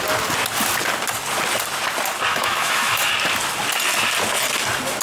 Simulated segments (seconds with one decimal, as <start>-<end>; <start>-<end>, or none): 2.3-3.1